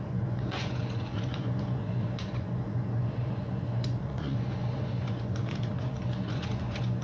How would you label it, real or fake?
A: fake